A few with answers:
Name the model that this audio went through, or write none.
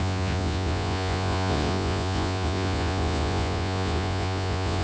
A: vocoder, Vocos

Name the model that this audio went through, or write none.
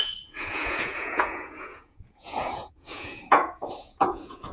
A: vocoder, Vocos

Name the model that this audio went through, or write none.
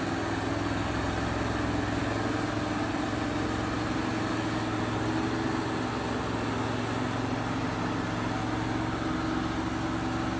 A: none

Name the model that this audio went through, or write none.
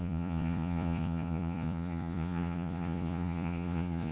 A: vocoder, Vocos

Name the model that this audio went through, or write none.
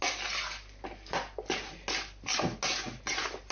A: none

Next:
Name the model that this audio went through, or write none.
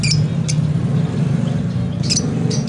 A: none